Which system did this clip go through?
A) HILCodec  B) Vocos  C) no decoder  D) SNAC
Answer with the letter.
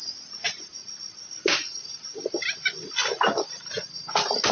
C